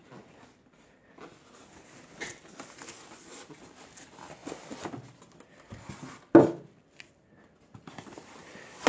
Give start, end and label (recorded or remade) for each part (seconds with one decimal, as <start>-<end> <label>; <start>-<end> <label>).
0.0-8.9 recorded